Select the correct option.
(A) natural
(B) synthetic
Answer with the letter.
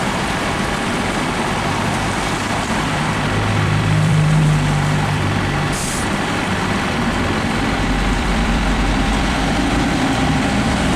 B